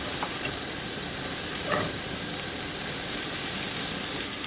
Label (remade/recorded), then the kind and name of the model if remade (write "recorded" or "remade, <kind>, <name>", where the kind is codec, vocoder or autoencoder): recorded